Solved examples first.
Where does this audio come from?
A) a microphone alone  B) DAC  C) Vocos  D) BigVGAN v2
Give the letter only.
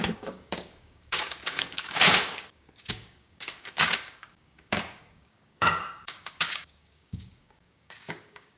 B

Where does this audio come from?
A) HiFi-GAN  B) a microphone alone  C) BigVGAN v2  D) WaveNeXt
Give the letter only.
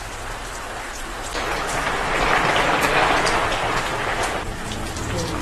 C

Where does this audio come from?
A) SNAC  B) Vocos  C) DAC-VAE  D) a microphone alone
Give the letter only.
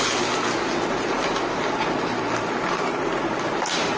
D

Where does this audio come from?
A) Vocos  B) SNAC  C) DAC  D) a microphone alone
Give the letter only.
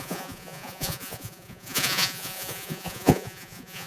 A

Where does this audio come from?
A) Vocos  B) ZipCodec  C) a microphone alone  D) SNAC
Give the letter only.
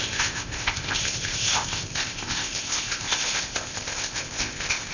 B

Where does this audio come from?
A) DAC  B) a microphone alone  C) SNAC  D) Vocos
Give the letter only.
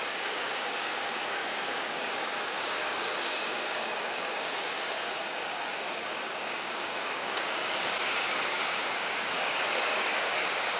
A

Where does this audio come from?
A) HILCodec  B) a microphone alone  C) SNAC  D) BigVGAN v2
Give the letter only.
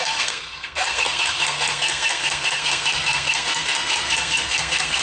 C